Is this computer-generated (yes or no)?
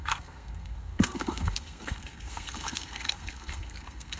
yes